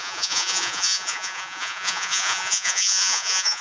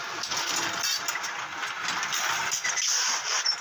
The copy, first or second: first